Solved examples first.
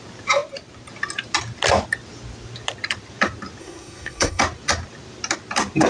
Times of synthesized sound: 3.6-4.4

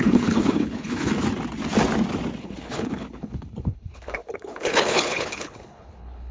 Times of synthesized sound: 0.0-1.1; 2.4-6.3

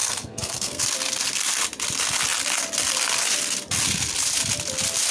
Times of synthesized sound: 0.0-0.8

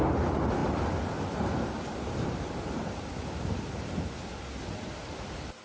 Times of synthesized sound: none

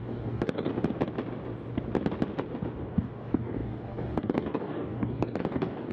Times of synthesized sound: 0.0-0.7; 2.8-5.9